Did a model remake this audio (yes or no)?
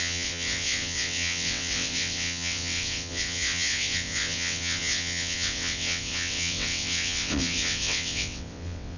yes